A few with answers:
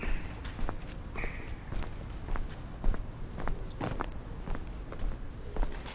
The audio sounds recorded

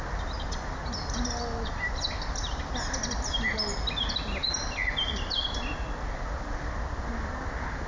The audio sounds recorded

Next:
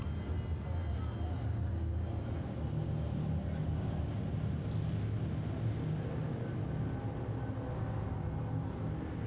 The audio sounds recorded